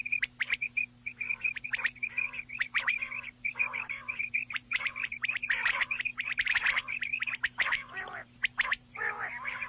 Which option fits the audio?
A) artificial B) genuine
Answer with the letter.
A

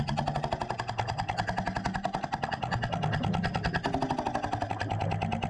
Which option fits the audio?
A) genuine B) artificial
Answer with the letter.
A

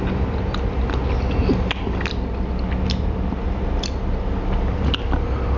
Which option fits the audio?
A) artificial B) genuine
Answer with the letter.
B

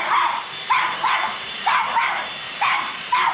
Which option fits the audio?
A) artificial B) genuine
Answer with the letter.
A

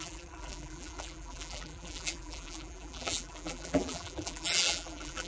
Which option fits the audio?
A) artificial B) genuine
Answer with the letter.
A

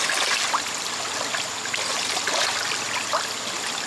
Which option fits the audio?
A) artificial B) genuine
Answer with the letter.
B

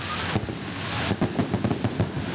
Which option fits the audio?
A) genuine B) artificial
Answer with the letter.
A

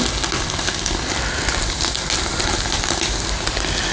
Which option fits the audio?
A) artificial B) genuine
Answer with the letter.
B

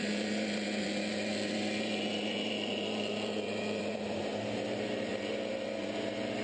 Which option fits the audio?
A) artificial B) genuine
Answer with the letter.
A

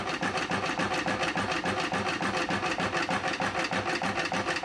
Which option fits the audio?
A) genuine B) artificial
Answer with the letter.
A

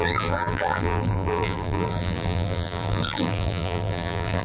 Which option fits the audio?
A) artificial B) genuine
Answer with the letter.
A